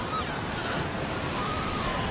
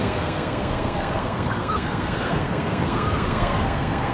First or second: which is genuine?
first